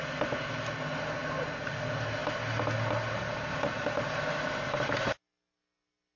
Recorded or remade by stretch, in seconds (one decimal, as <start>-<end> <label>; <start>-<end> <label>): 0.0-6.2 recorded